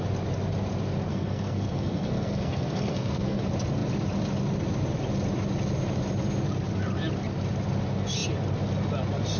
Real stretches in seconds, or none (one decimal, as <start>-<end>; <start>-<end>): 0.0-1.1; 3.4-9.4